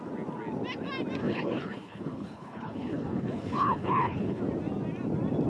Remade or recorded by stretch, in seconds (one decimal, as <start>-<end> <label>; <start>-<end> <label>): 0.0-1.2 recorded; 1.2-4.4 remade; 4.4-5.5 recorded